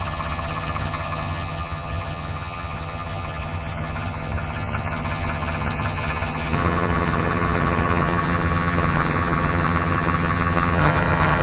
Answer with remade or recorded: remade